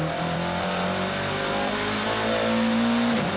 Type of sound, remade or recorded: recorded